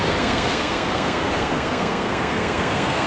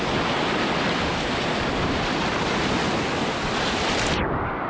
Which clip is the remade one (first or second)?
first